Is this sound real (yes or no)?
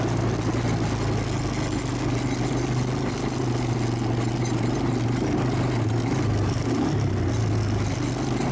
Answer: yes